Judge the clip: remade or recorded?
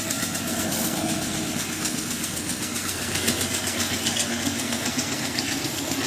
remade